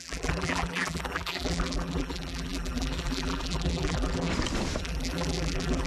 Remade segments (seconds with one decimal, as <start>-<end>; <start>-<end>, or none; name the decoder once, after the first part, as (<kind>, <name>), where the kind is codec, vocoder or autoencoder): 0.0-4.3 (vocoder, BigVGAN v2); 4.8-5.9